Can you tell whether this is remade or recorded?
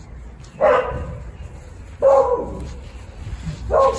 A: recorded